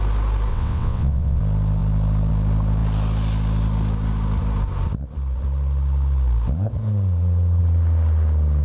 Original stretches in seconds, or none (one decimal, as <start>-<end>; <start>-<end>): 0.0-0.5; 1.4-8.6